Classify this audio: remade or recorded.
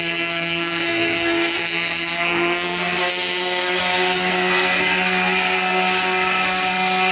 remade